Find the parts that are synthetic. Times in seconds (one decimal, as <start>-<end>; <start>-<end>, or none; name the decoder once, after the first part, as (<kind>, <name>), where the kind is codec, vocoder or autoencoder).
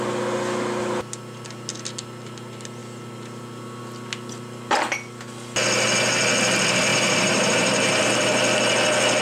6.9-8.0 (vocoder, BigVGAN v2)